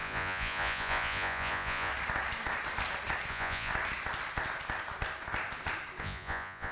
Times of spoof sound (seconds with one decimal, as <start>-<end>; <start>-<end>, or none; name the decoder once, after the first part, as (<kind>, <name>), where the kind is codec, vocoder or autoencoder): 0.0-1.9 (vocoder, Vocos); 3.3-3.7; 6.0-6.7